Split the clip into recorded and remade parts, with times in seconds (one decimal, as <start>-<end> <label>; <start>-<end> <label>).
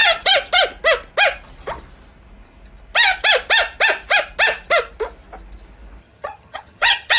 0.0-6.0 recorded; 6.0-7.2 remade